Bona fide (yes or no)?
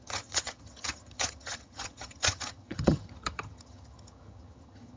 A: no